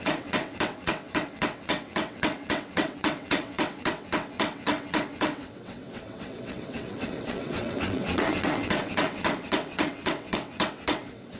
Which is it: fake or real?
fake